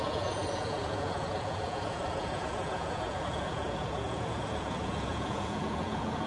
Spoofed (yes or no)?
yes